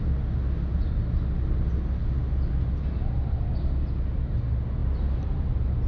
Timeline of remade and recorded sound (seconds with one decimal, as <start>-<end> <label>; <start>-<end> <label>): 0.0-5.9 recorded

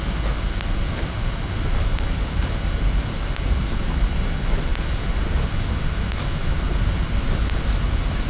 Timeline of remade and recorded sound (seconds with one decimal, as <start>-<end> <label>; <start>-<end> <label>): 0.0-8.3 recorded

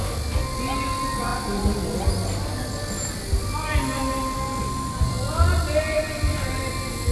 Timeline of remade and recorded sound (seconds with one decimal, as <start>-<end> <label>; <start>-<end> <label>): 0.0-7.1 recorded

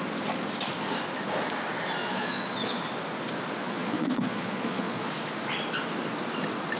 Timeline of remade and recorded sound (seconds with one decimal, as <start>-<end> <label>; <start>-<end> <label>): 0.0-2.0 recorded; 2.0-2.8 remade; 2.8-3.6 recorded; 3.6-5.1 remade; 5.1-6.8 recorded

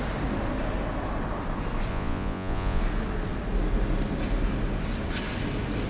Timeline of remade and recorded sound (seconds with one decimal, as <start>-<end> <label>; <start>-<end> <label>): 0.0-1.9 recorded; 1.9-2.8 remade; 2.8-5.9 recorded

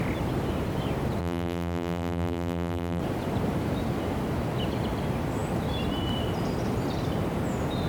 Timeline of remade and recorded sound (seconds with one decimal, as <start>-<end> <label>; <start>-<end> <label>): 0.0-1.2 recorded; 1.2-3.0 remade; 3.0-7.9 recorded

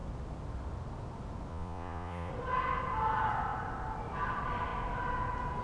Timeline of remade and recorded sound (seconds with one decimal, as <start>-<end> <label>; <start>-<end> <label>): 0.0-1.5 recorded; 1.5-2.3 remade; 2.3-5.6 recorded

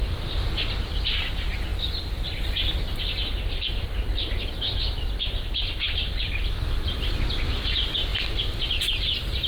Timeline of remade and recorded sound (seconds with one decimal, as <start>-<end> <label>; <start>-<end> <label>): 0.0-8.1 recorded; 8.1-9.1 remade; 9.1-9.5 recorded